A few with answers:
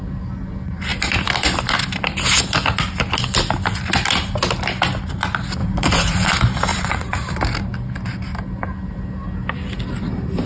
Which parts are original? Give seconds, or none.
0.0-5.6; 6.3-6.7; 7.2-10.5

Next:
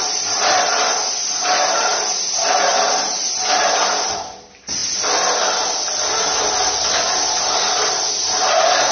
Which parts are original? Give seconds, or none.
0.0-8.9

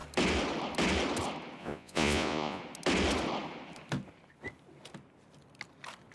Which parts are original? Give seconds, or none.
0.0-1.6; 2.6-6.1

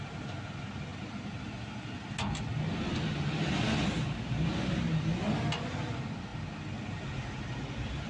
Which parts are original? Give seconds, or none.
0.0-8.1

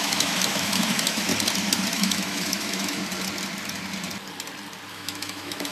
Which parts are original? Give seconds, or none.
1.3-1.9; 3.0-4.9